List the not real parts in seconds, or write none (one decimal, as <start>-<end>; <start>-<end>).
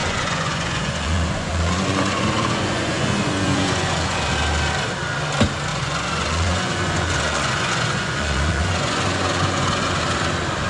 0.0-4.3; 5.7-10.0